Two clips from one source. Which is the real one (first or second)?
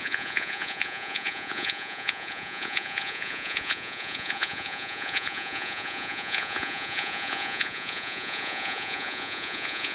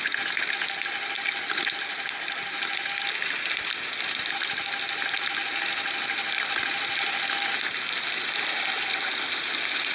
second